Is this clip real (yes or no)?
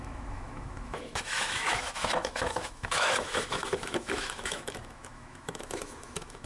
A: no